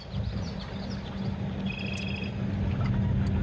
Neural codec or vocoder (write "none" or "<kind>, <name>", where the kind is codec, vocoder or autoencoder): none